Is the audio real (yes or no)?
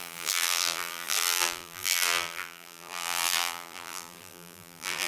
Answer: no